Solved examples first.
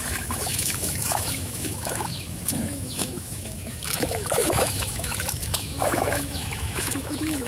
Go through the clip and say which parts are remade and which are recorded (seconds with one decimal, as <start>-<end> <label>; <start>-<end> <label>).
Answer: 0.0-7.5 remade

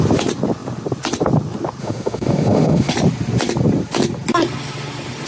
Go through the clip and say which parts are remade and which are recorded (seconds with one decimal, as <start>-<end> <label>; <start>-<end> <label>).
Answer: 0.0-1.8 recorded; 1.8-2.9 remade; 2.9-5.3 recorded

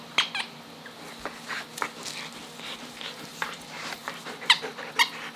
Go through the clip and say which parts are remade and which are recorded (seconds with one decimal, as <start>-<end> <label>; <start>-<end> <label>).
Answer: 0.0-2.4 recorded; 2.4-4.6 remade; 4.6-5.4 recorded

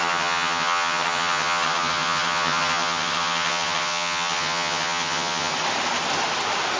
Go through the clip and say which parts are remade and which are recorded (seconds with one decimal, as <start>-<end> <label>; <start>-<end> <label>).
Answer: 0.0-5.5 remade; 5.5-6.8 recorded

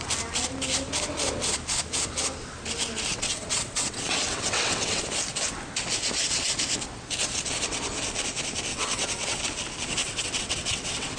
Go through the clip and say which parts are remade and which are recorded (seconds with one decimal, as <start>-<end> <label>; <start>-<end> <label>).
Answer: 0.0-3.1 recorded; 3.1-5.0 remade; 5.0-8.7 recorded; 8.7-9.4 remade; 9.4-10.0 recorded; 10.0-11.2 remade

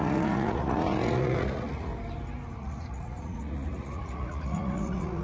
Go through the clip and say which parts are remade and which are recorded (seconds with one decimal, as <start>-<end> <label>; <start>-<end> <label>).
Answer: 0.0-1.9 remade; 1.9-2.6 recorded; 2.6-5.2 remade